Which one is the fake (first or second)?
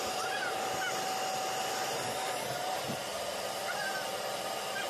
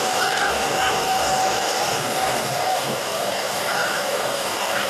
second